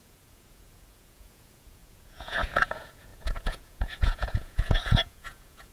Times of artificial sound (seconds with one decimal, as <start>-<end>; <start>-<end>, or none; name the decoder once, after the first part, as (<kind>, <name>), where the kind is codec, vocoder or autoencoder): 0.0-5.7 (vocoder, Vocos)